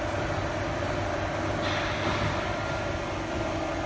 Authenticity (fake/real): real